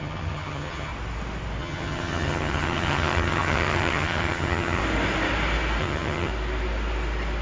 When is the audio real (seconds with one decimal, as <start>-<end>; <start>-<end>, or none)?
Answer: 0.9-1.6; 4.8-5.8; 6.3-7.4